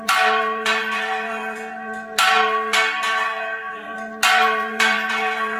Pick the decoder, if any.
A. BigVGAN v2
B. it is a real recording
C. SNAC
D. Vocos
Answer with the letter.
A